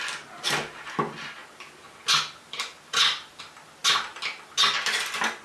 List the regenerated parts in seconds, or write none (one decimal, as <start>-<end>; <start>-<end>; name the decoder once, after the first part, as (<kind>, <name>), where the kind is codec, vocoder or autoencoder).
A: none